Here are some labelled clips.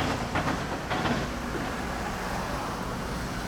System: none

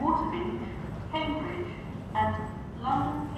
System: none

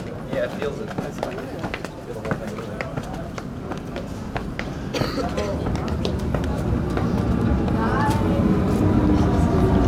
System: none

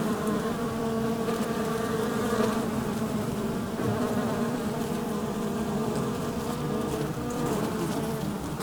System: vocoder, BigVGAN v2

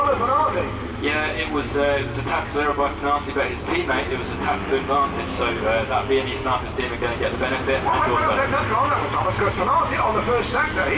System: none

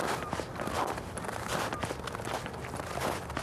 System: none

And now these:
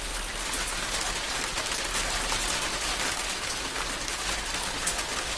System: none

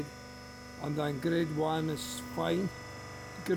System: none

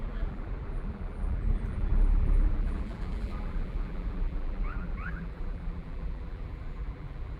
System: vocoder, BigVGAN v2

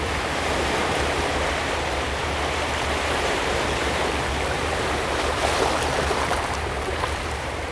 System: vocoder, BigVGAN v2